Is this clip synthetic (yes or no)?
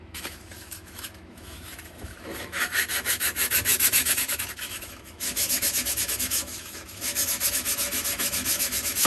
yes